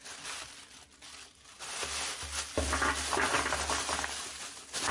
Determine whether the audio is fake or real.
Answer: real